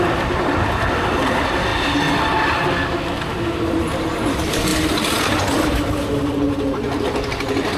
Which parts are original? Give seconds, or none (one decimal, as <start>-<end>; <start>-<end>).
0.0-7.8